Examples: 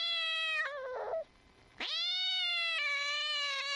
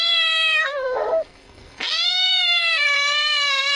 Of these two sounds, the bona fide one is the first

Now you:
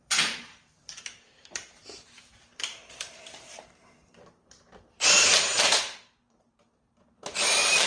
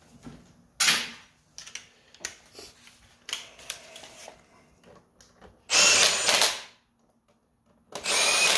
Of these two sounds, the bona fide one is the second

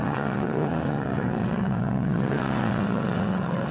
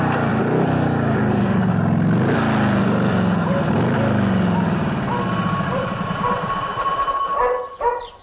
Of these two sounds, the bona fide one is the second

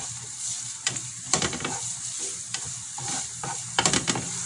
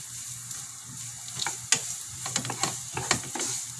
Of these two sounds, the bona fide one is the second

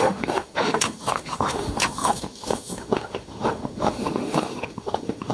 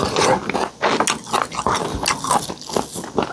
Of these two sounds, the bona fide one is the second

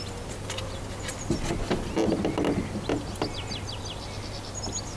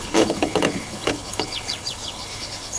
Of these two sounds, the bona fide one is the first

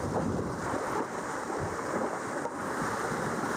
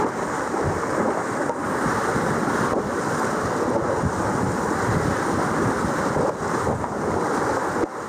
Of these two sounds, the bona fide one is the second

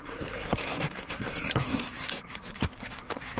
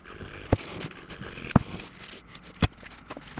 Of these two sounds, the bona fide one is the second